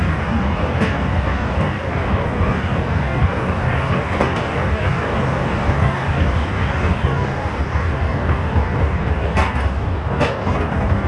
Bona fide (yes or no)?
no